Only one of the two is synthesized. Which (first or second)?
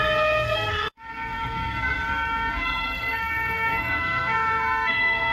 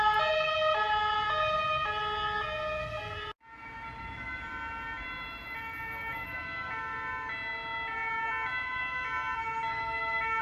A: first